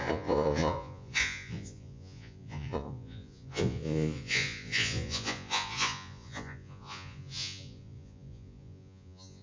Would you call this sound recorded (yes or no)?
no